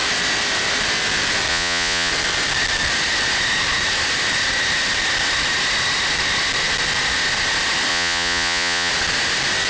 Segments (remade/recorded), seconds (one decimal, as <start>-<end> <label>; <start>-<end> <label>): 0.0-1.5 recorded; 1.5-2.1 remade; 2.1-7.9 recorded; 7.9-8.9 remade; 8.9-9.7 recorded

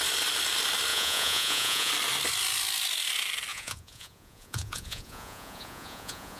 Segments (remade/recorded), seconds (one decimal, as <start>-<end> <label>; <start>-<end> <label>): 0.0-0.9 recorded; 0.9-1.9 remade; 1.9-3.5 recorded; 3.5-6.4 remade

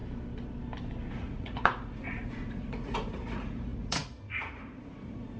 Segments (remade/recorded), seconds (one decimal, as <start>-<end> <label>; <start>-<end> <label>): 0.0-1.1 recorded; 1.1-5.4 remade

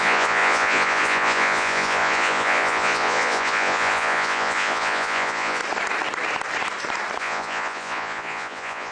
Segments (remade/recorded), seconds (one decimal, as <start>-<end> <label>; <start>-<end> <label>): 0.0-5.6 remade; 5.6-7.2 recorded; 7.2-8.9 remade

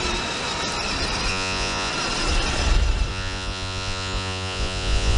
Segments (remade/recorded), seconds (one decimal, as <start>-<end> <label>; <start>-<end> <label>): 0.0-1.3 recorded; 1.3-1.9 remade; 1.9-3.1 recorded; 3.1-5.2 remade

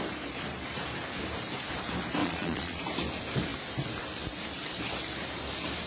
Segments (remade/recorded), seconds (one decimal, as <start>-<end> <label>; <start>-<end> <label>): 0.0-2.2 recorded; 2.2-2.8 remade; 2.8-5.9 recorded

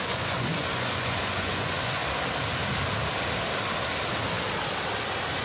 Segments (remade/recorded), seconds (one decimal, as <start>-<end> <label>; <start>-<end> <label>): 0.0-2.0 remade; 2.0-5.4 recorded